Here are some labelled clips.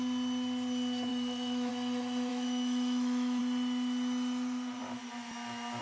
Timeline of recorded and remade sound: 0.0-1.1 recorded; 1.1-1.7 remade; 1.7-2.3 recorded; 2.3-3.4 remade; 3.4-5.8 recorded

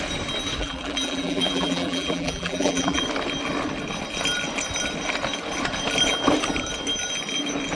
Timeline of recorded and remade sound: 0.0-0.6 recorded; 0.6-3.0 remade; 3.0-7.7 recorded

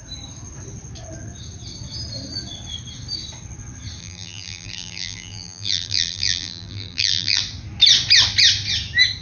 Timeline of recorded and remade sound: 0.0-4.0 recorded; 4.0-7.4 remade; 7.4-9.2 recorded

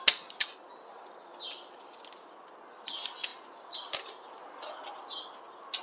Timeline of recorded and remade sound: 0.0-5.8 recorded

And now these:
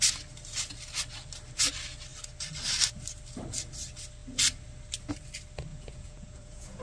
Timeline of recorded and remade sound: 0.0-5.7 recorded; 5.7-6.8 remade

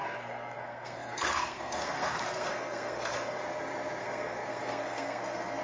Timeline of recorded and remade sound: 0.0-3.4 remade; 3.4-4.0 recorded; 4.0-5.6 remade

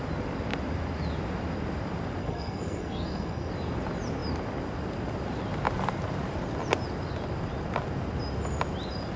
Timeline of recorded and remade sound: 0.0-2.2 recorded; 2.2-3.5 remade; 3.5-9.2 recorded